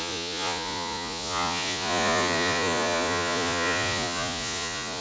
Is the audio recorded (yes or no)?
no